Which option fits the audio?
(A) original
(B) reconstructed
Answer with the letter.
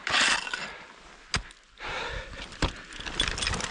A